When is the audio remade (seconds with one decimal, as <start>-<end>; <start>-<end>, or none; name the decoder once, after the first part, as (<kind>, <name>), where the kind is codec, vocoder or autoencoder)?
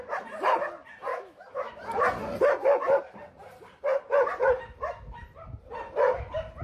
1.1-1.7 (autoencoder, DAC-VAE)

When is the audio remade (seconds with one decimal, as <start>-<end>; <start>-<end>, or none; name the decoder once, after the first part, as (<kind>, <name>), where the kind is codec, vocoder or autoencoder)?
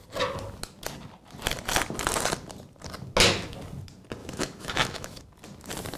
4.2-5.2 (autoencoder, DAC-VAE)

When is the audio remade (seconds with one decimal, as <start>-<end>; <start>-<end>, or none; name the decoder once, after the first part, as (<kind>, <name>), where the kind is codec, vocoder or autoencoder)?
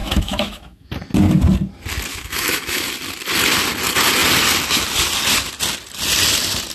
0.0-0.9 (autoencoder, DAC-VAE); 2.1-2.9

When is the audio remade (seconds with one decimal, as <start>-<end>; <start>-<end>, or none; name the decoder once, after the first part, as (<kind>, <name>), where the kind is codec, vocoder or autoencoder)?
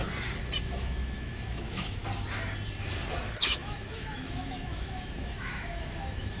0.6-2.0 (autoencoder, DAC-VAE); 3.2-6.4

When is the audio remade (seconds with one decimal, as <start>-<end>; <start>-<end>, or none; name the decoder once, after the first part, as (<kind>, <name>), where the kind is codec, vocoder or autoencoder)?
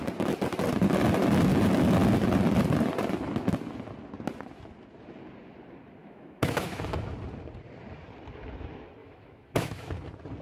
6.0-6.8 (autoencoder, DAC-VAE); 9.0-9.9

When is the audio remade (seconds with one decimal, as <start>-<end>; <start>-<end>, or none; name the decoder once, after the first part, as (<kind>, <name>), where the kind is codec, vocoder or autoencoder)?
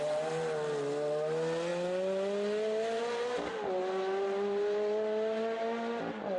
none